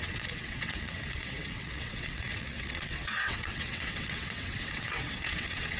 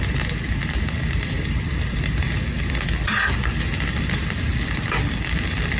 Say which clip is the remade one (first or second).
first